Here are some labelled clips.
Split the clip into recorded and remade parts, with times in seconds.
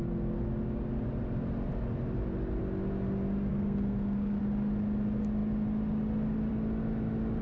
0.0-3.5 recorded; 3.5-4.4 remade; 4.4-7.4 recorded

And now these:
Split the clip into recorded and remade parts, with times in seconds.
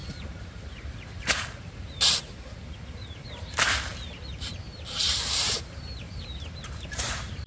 0.0-3.9 remade; 3.9-5.0 recorded; 5.0-7.5 remade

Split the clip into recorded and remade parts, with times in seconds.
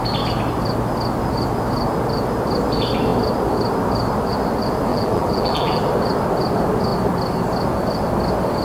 0.0-4.9 recorded; 4.9-5.8 remade; 5.8-8.6 recorded